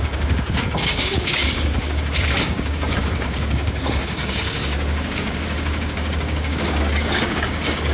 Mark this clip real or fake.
fake